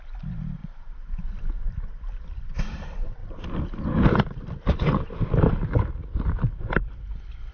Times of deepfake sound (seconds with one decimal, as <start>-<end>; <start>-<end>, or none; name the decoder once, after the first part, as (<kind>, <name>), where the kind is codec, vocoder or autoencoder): 0.6-1.3 (vocoder, BigVGAN v2)